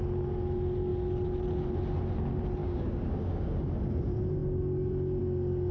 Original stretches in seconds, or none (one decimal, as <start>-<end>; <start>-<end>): 0.0-2.6; 3.6-5.7